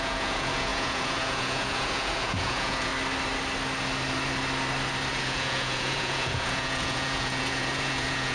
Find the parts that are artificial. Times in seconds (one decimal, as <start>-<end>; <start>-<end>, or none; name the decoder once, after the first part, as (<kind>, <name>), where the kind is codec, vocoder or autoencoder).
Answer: 0.0-2.9 (vocoder, Vocos); 5.1-8.3